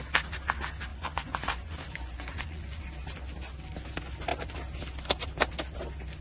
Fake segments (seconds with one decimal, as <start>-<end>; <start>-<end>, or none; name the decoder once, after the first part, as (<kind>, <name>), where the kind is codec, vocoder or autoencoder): 0.9-2.8 (vocoder, Vocos)